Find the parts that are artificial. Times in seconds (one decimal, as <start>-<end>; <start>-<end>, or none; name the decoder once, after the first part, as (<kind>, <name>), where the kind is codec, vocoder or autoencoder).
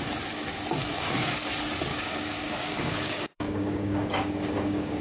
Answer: 0.8-1.5 (codec, DAC); 1.9-5.0